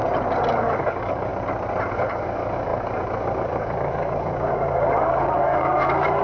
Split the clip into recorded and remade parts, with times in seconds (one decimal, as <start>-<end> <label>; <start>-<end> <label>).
0.0-0.5 recorded; 0.5-1.3 remade; 1.3-1.9 recorded; 1.9-6.2 remade